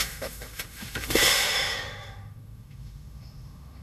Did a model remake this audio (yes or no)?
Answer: yes